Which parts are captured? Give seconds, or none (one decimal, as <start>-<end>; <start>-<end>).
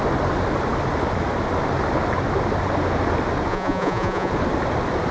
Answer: 0.0-3.5; 4.3-5.1